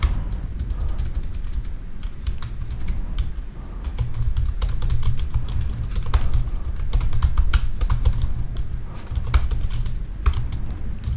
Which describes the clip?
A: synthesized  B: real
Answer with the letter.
B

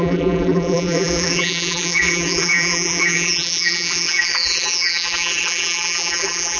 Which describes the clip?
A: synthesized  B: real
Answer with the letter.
A